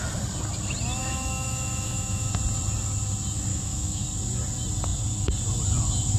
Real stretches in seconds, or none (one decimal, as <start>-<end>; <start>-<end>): 0.0-1.0; 2.3-3.5; 4.0-6.2